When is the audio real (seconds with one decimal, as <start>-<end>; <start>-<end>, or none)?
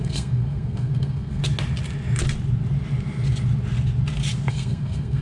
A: 1.4-4.5